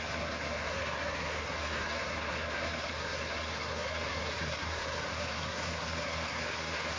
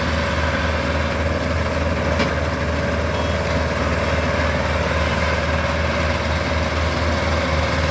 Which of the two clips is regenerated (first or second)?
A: first